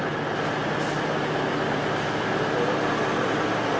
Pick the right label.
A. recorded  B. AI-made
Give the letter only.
A